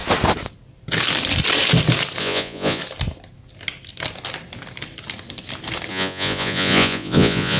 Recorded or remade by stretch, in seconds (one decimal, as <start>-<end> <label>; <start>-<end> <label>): 0.0-2.2 recorded; 2.2-2.8 remade; 2.8-5.9 recorded; 5.9-7.6 remade